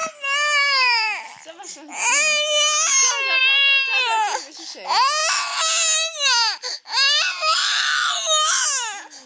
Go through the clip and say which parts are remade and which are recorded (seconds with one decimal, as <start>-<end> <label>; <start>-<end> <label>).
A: 0.0-9.3 recorded